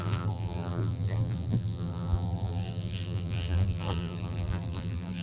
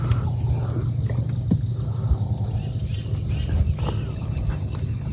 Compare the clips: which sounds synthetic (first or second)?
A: first